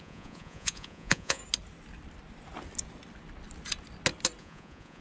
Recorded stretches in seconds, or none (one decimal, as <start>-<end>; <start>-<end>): 1.4-4.4